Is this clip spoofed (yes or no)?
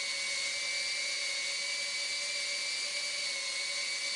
no